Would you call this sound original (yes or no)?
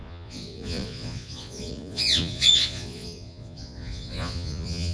no